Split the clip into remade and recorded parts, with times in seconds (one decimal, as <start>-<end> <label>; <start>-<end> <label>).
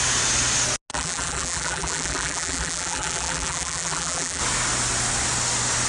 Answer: 0.0-0.9 recorded; 0.9-4.4 remade; 4.4-5.9 recorded